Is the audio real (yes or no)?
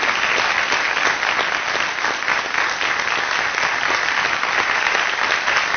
yes